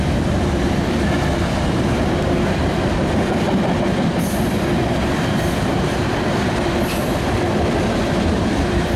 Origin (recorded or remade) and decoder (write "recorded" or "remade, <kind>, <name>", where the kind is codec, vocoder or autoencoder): remade, vocoder, BigVGAN v2